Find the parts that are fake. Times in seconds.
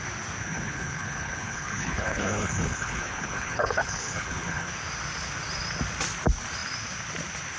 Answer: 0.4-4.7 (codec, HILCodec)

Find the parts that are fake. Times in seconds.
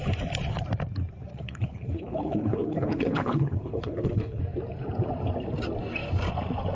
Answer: 1.3-4.4 (codec, HILCodec)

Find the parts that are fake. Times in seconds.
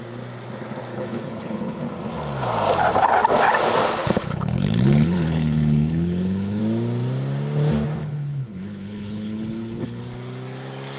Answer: 0.9-1.9 (codec, HILCodec); 4.0-6.6; 8.0-10.0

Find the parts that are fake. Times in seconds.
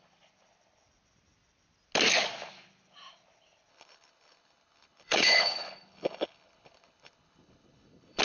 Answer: 3.7-8.2 (codec, HILCodec)